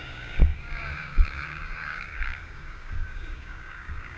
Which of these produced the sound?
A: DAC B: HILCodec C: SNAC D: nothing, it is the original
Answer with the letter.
A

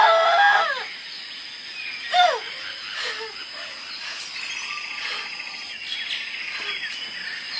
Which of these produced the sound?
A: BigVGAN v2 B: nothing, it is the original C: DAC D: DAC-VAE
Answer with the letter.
B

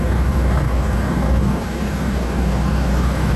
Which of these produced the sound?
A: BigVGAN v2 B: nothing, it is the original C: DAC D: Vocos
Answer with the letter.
C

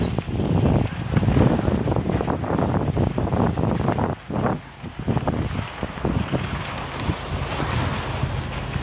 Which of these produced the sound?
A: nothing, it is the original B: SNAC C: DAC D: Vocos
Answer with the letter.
A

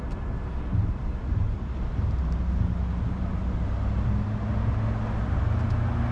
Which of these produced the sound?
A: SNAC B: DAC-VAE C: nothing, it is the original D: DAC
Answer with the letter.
C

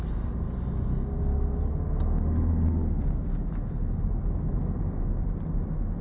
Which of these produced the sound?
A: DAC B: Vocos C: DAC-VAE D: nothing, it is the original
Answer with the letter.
D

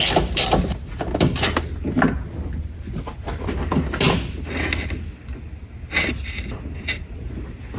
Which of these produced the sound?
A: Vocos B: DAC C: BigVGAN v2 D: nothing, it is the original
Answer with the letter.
D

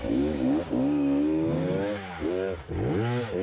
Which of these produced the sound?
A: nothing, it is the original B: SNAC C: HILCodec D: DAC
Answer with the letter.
D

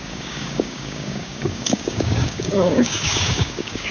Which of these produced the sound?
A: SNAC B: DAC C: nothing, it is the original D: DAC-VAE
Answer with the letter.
B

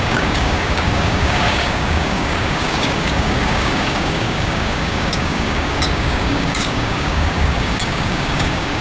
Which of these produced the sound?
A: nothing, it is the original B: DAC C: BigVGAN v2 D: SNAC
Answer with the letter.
B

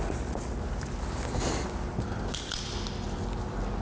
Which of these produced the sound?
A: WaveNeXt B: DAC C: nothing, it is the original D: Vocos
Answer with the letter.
C